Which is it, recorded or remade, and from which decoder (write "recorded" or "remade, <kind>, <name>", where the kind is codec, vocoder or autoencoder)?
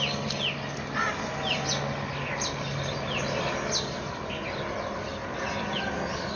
recorded